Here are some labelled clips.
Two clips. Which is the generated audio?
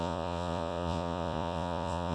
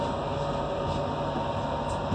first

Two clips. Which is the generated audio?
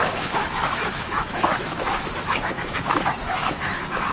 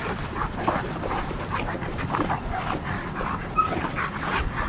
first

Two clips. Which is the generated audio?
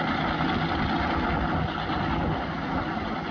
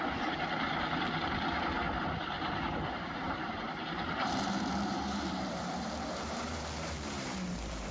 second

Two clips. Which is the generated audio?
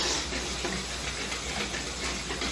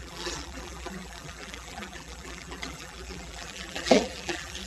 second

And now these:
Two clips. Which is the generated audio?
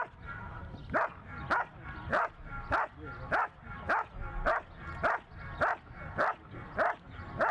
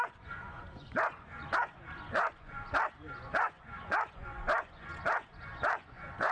second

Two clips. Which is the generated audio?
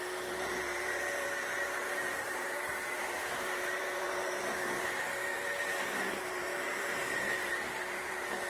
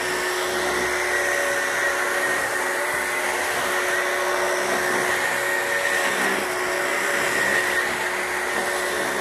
first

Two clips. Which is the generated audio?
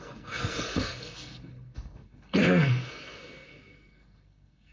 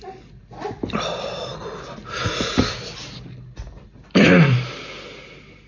first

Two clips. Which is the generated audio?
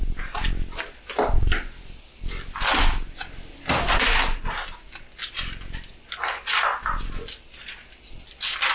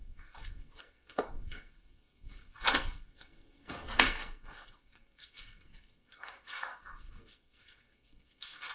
second